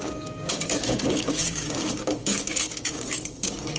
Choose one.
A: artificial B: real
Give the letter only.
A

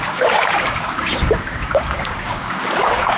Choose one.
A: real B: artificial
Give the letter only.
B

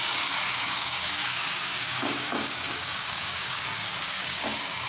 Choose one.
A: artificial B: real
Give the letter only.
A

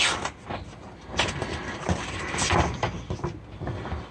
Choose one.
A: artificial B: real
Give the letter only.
B